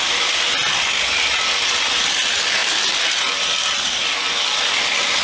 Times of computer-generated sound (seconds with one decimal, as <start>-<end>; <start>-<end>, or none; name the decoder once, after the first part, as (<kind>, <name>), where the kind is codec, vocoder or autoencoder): none